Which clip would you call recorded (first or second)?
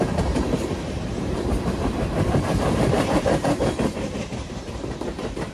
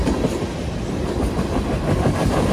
second